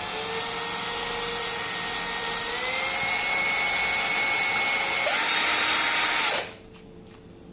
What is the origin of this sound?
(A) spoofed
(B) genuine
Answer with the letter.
B